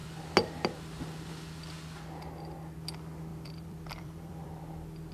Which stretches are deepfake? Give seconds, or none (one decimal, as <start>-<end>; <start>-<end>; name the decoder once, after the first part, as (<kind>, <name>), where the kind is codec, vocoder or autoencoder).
3.3-4.5 (vocoder, BigVGAN v2)

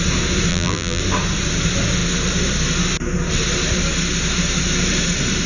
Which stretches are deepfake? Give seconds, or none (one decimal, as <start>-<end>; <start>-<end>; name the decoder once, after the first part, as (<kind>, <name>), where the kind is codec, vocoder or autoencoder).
0.5-1.0 (vocoder, BigVGAN v2)